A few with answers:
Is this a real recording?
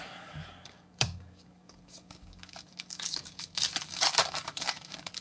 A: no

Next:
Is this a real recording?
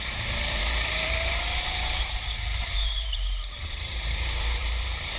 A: no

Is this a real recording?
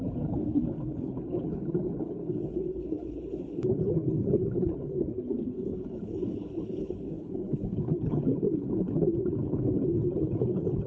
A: no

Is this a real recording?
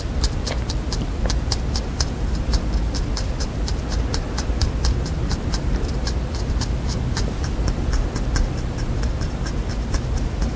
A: yes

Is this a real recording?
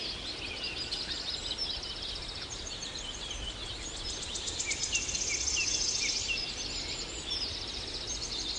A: yes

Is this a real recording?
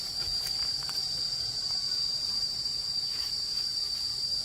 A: no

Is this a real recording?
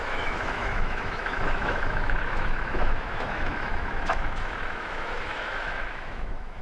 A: no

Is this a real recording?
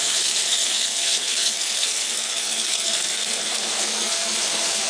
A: no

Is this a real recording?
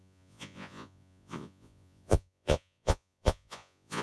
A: no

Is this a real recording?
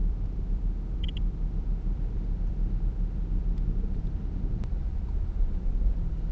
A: no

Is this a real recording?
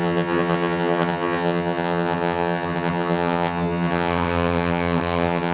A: no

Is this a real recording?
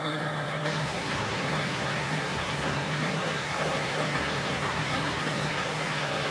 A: no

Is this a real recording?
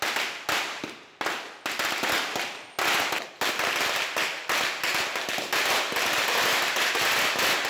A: yes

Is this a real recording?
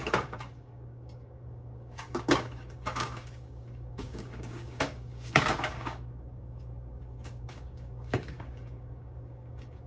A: no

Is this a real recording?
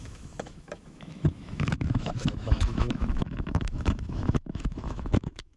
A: no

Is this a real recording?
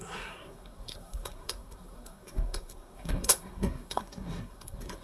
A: no